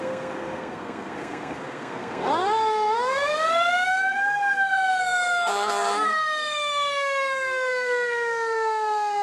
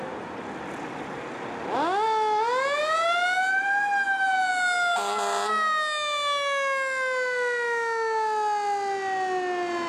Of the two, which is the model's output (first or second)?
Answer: first